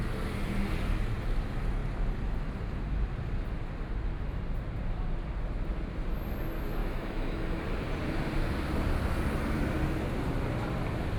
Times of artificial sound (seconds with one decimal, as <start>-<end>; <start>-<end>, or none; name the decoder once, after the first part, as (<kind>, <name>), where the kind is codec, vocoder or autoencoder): 6.8-7.6 (autoencoder, DAC-VAE)